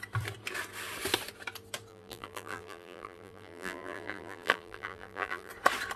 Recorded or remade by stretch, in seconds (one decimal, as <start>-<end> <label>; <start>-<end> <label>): 0.0-1.9 recorded; 1.9-5.5 remade; 5.5-6.0 recorded